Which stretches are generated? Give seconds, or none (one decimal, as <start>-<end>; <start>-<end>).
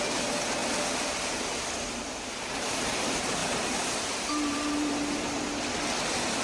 3.4-5.4